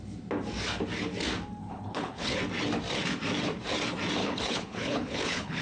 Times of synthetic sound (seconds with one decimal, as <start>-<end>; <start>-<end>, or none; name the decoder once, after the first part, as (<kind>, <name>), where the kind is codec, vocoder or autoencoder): 1.6-2.4 (codec, HILCodec); 4.2-5.6

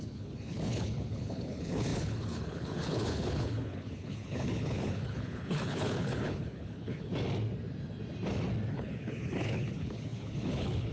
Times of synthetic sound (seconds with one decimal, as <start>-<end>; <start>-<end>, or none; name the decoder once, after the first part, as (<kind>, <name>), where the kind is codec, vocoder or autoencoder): 0.0-7.1 (codec, HILCodec); 8.7-10.9

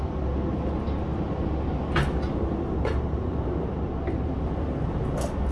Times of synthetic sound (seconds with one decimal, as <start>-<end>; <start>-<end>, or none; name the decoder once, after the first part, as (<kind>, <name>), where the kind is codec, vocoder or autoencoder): none

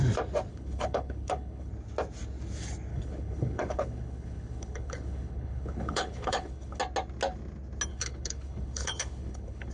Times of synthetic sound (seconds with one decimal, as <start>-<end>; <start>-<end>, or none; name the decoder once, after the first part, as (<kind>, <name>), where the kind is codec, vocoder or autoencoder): 0.5-1.7 (codec, HILCodec); 2.9-6.8; 7.9-9.7